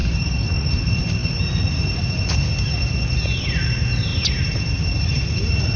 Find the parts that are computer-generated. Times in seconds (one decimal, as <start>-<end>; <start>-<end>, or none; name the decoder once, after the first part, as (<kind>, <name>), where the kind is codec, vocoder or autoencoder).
0.0-0.7 (codec, DAC)